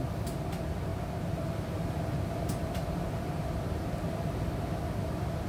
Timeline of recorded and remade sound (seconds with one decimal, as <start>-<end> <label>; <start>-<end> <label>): 0.0-5.5 recorded